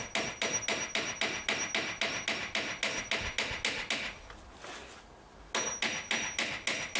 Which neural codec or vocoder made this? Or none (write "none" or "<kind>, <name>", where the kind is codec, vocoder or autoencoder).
none